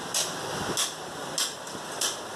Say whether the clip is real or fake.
real